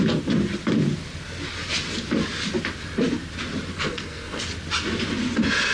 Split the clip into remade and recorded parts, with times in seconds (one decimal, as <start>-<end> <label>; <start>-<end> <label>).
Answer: 0.0-3.7 recorded; 3.7-4.4 remade; 4.4-5.7 recorded